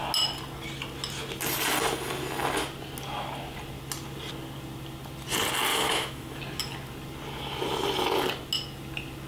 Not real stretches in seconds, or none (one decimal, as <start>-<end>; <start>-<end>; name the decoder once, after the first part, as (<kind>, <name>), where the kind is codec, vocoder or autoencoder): 5.7-6.4 (autoencoder, DAC-VAE)